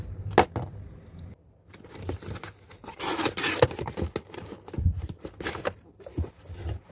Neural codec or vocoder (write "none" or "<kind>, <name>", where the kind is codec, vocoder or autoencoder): none